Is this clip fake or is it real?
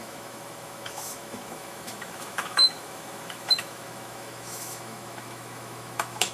fake